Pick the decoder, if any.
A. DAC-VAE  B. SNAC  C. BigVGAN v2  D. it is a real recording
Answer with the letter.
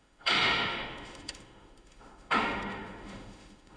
A